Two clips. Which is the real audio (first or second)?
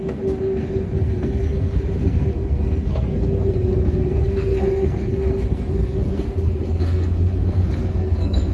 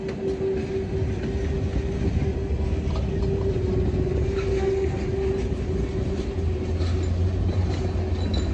second